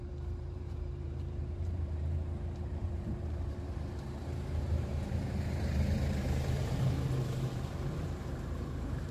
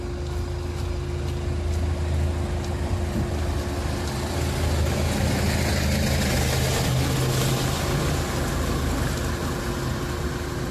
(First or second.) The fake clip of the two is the first